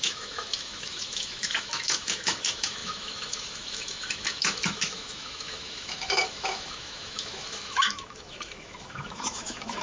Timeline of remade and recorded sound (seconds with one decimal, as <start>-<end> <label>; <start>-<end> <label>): 0.0-9.8 remade